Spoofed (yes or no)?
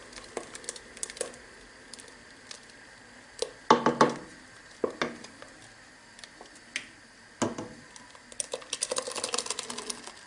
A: no